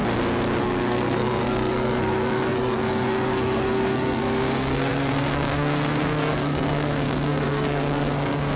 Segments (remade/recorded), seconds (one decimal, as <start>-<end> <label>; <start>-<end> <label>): 0.0-0.6 recorded; 0.6-8.6 remade